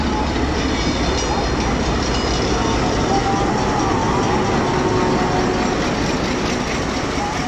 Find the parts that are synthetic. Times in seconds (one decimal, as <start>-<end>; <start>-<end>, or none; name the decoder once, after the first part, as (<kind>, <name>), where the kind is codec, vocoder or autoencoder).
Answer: none